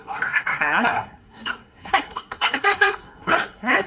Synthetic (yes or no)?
yes